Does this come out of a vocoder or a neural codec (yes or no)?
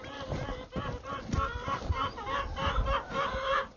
no